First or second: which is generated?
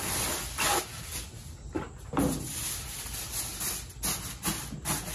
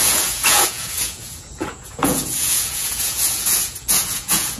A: second